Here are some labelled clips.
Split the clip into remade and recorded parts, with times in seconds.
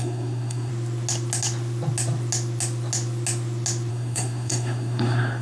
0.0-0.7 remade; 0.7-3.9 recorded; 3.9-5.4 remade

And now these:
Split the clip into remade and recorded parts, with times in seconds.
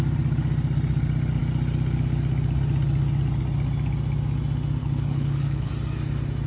0.0-4.8 recorded; 4.8-5.7 remade; 5.7-6.5 recorded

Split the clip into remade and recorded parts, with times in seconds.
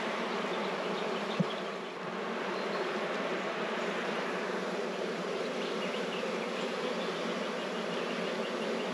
0.0-3.3 recorded; 3.3-5.4 remade; 5.4-8.9 recorded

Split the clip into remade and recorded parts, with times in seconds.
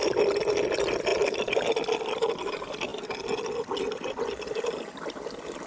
0.0-5.7 recorded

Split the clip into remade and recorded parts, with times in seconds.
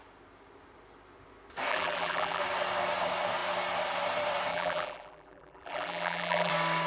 0.0-1.7 recorded; 1.7-2.4 remade; 2.4-4.5 recorded; 4.5-6.5 remade; 6.5-6.9 recorded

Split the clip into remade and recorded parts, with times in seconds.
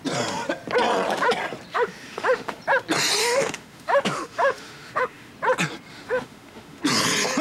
0.0-1.7 recorded; 1.7-2.6 remade; 2.6-3.2 recorded; 3.2-5.3 remade; 5.3-5.9 recorded; 5.9-6.8 remade; 6.8-7.4 recorded